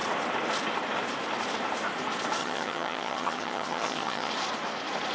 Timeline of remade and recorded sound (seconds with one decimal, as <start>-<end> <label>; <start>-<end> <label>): 0.0-2.4 recorded; 2.4-4.3 remade; 4.3-5.1 recorded